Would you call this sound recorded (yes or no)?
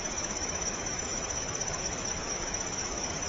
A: no